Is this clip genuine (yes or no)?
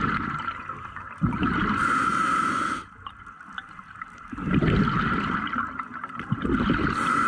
yes